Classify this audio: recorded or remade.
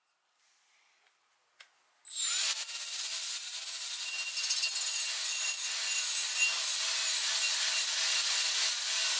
recorded